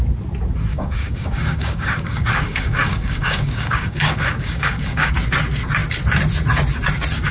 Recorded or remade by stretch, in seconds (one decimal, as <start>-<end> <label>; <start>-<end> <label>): 0.0-0.7 recorded; 0.7-5.1 remade; 5.1-7.3 recorded